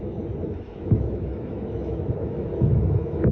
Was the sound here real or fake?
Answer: fake